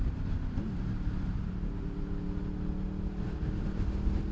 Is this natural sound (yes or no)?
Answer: yes